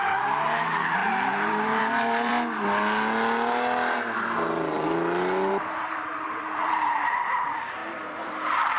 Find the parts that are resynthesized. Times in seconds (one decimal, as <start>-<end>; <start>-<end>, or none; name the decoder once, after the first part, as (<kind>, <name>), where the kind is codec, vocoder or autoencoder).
0.0-2.3 (vocoder, BigVGAN v2); 5.5-8.8